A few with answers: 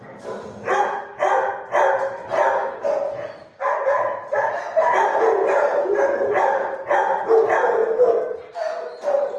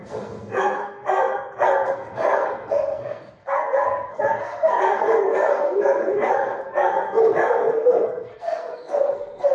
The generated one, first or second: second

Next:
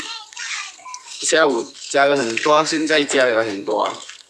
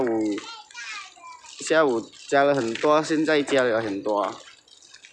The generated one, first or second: first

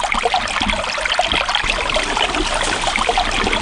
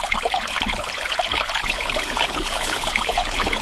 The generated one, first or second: second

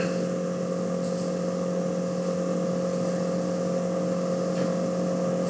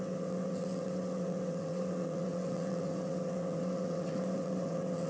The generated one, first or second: second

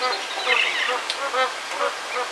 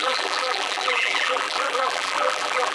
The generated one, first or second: second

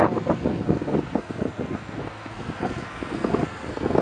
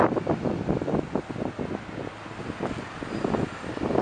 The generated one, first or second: first